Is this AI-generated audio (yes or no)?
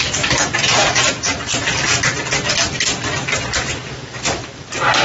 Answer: no